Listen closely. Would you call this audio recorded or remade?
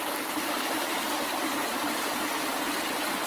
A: recorded